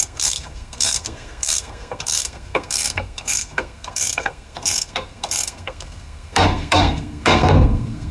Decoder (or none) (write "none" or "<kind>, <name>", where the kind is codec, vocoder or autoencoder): codec, SNAC